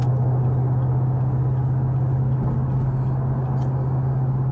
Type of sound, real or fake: real